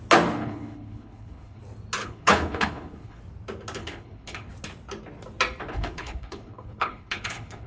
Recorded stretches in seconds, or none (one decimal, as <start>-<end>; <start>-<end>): 0.0-0.4; 1.6-2.0; 3.2-3.8; 4.5-5.7